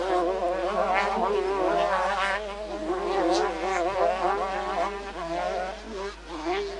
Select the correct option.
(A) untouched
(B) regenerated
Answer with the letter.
A